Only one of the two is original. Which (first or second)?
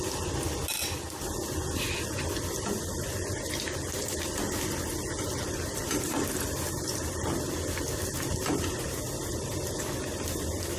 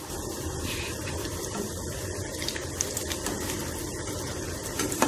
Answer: first